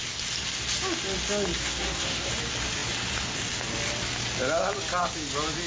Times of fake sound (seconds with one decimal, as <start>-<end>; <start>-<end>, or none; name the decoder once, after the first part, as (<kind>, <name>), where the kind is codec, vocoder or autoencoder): 1.6-2.3 (codec, SNAC)